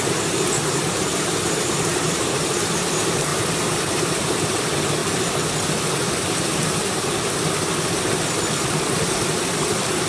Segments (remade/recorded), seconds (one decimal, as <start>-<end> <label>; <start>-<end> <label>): 0.0-5.0 remade; 5.0-6.2 recorded; 6.2-6.8 remade; 6.8-8.9 recorded; 8.9-10.1 remade